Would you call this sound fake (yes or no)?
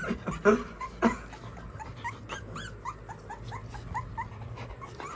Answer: no